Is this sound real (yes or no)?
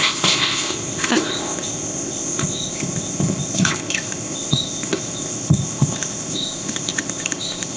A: no